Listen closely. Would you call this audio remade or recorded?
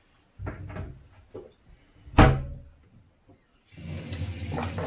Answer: recorded